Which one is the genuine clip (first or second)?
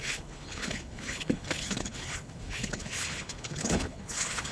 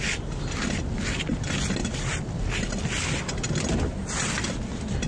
second